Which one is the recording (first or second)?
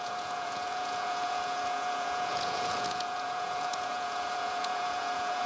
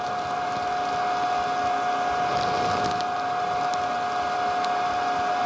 second